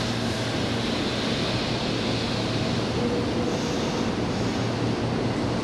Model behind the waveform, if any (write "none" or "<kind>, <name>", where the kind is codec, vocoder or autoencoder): none